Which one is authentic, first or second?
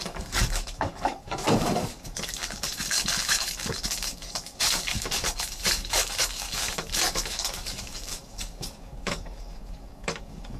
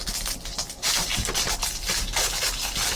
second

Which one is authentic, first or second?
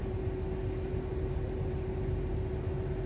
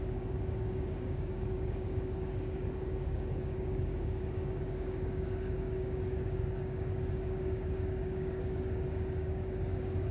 first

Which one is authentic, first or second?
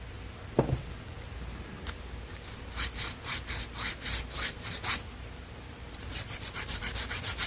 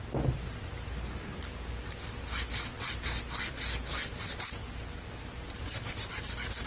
second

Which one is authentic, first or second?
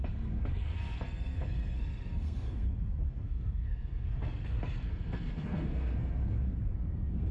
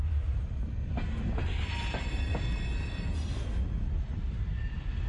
second